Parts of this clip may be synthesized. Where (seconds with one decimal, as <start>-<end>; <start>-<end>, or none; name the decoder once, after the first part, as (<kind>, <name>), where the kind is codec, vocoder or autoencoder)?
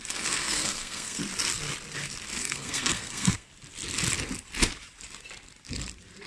0.0-1.2 (codec, SNAC); 2.4-3.5